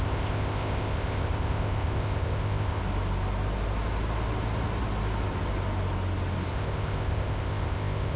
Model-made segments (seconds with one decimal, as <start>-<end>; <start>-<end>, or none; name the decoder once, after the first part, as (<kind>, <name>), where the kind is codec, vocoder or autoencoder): 0.0-2.8 (codec, ZipCodec); 6.5-8.2

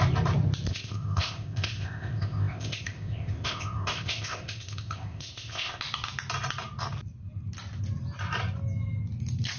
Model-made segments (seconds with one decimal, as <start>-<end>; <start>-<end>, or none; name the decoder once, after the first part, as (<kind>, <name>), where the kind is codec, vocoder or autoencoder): 0.7-5.8 (codec, ZipCodec)

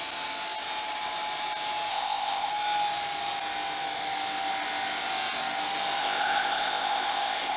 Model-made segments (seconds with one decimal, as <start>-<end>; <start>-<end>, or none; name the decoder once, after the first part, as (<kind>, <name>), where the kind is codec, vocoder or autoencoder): 1.9-2.5 (codec, ZipCodec); 6.0-7.6